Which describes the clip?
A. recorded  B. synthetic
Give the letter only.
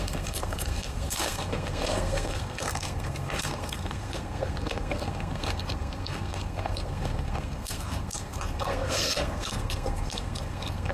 B